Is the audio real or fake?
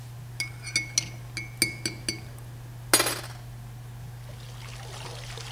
real